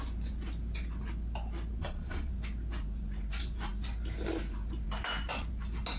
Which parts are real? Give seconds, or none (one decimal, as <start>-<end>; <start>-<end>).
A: 0.0-1.8; 2.3-6.0